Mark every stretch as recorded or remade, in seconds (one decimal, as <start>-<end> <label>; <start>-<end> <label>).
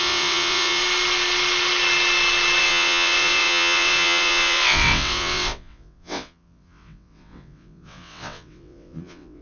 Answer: 0.0-0.8 remade; 0.8-2.6 recorded; 2.6-9.4 remade